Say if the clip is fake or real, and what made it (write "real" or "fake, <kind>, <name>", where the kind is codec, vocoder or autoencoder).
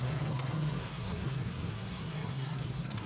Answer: fake, codec, SNAC